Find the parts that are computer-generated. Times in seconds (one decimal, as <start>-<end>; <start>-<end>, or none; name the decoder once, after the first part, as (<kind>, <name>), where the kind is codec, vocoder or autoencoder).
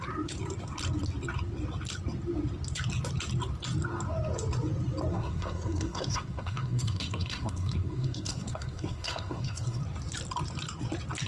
5.1-9.8 (codec, SNAC)